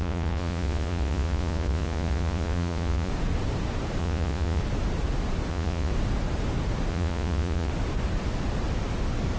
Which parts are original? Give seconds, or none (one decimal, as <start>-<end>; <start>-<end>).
3.1-4.0; 4.6-5.5; 5.9-6.9; 7.7-9.4